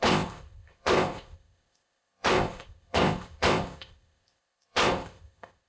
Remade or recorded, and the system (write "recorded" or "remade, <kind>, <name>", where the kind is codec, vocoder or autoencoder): remade, codec, ZipCodec